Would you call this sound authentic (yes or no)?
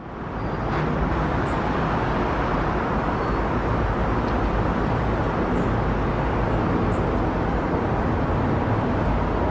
yes